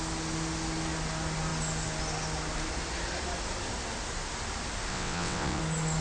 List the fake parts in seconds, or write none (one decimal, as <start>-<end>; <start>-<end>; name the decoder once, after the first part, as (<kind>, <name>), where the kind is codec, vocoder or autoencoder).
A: 4.9-5.6 (vocoder, WaveNeXt)